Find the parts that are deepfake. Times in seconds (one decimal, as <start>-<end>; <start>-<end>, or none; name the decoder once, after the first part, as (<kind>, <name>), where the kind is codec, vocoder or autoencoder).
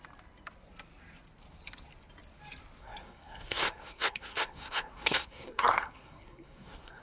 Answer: 2.8-7.0 (codec, SNAC)